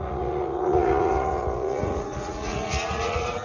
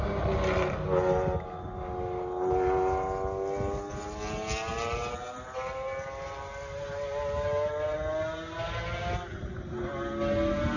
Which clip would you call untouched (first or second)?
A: second